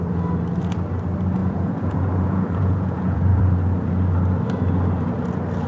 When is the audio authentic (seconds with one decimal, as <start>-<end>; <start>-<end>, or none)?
0.0-1.4; 3.4-5.7